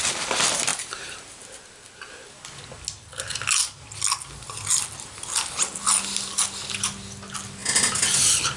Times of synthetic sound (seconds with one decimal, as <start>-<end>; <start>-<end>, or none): 0.7-1.2